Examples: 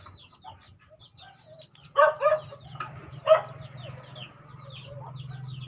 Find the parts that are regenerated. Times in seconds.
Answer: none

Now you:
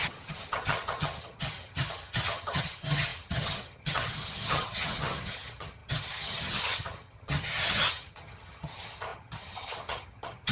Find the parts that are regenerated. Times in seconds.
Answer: 0.0-10.5 (vocoder, HiFi-GAN)

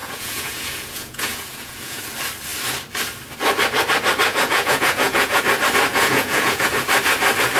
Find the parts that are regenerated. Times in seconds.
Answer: 0.0-2.0 (vocoder, Vocos); 4.3-5.4; 5.9-6.7